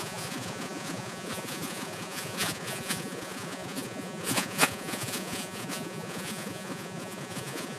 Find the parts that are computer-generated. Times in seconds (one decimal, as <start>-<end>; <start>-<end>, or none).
0.0-7.8